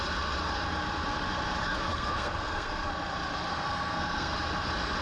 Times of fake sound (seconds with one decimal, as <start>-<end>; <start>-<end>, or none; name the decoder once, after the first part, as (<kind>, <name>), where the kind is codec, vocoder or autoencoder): 1.9-2.9 (codec, SNAC); 3.5-4.3